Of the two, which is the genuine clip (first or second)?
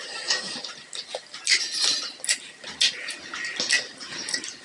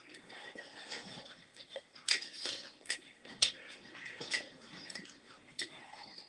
first